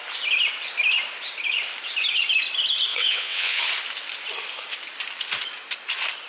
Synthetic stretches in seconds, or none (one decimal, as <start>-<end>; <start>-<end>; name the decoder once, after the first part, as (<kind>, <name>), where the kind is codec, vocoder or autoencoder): 2.9-3.6 (vocoder, WaveNeXt)